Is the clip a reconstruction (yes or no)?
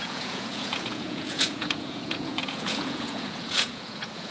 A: yes